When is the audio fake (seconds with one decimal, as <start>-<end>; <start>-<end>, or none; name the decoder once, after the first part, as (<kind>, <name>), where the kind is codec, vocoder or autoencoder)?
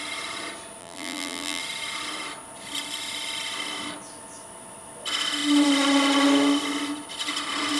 0.8-1.6 (vocoder, BigVGAN v2)